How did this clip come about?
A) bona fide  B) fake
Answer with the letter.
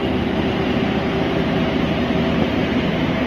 B